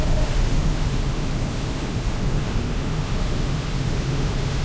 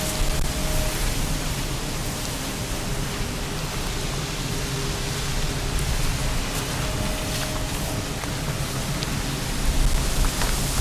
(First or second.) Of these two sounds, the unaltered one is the second